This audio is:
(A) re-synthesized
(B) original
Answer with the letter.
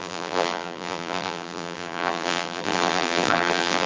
A